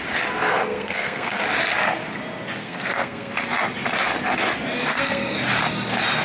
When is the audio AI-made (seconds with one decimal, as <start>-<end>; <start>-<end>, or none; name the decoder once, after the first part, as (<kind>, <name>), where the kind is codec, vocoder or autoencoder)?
0.5-1.4 (codec, SNAC); 2.6-3.3; 4.9-5.4